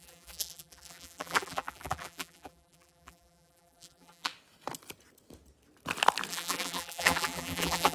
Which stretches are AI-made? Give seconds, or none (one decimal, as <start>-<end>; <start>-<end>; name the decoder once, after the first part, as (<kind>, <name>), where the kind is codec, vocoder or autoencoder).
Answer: 0.0-4.3 (vocoder, BigVGAN v2); 6.3-7.9